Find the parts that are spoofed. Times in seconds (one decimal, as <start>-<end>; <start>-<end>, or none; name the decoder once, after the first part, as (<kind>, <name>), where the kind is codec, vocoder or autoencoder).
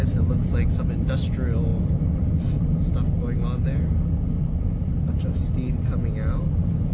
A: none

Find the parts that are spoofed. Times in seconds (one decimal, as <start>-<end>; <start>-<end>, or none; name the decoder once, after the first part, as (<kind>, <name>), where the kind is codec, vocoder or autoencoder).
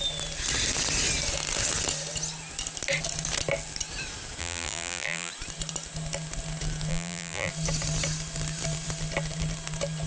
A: 4.4-5.3 (vocoder, BigVGAN v2); 6.9-7.5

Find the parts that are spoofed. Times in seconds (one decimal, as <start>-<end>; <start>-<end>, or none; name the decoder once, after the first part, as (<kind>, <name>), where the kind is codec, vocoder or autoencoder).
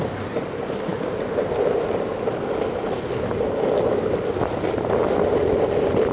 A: none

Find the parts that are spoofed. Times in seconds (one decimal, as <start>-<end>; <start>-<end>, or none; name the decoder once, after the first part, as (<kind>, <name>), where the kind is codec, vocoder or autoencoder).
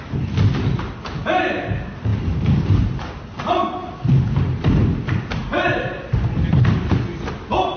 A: 2.1-6.6 (vocoder, BigVGAN v2)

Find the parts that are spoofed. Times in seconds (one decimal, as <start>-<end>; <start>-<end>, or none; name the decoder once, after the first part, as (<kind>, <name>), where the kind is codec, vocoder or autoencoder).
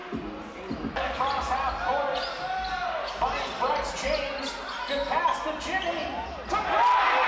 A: none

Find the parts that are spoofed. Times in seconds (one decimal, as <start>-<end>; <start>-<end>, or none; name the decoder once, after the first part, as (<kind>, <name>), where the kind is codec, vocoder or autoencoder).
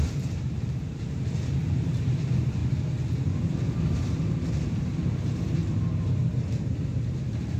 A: 0.0-2.6 (vocoder, BigVGAN v2); 4.8-5.6; 6.3-7.6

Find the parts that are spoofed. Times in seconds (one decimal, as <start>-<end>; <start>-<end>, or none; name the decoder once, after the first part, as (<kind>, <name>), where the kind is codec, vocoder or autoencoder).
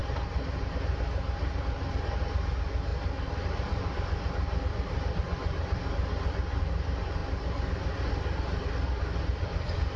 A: none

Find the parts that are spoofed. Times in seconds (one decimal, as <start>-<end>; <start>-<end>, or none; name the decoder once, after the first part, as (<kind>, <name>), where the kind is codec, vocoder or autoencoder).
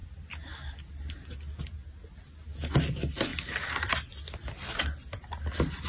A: 3.3-5.4 (vocoder, BigVGAN v2)